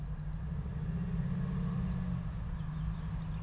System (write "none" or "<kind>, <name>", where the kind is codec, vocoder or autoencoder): none